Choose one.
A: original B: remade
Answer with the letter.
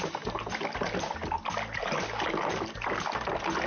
A